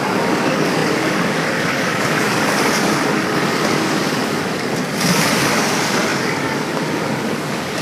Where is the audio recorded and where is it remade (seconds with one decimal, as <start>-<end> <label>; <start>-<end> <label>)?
0.0-7.8 remade